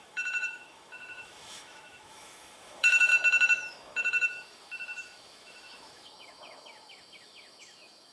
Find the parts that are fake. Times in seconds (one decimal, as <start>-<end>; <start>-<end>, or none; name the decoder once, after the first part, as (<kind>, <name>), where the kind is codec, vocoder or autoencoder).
0.0-3.1 (autoencoder, DAC-VAE); 3.7-8.1